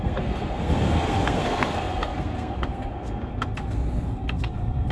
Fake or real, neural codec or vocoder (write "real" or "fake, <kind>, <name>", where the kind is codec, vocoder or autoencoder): fake, codec, SNAC